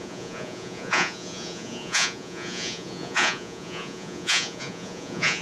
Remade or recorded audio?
remade